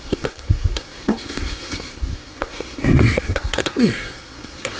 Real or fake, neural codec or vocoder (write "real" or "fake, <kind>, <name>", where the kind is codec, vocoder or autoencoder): fake, codec, SNAC